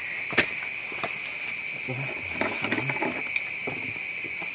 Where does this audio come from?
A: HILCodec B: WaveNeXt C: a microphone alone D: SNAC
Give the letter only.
C